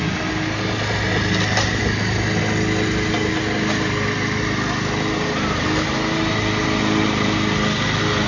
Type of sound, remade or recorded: recorded